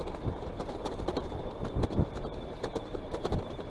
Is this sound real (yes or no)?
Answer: no